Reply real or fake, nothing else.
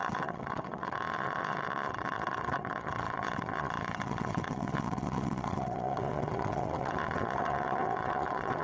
fake